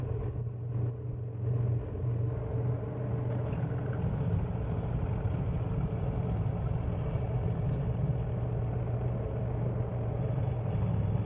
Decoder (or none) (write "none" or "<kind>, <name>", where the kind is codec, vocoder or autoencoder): none